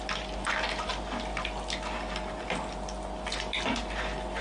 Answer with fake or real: real